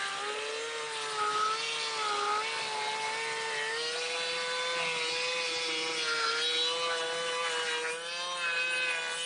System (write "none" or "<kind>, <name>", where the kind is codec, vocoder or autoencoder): none